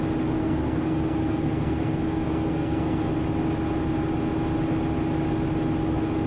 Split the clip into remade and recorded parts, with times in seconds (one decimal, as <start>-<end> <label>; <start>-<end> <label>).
0.0-0.4 recorded; 0.4-3.1 remade; 3.1-6.3 recorded